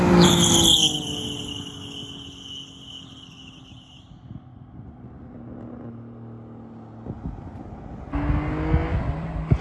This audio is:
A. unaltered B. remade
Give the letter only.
A